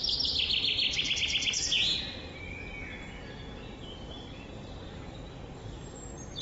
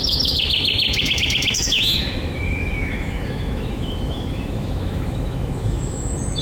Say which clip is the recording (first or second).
first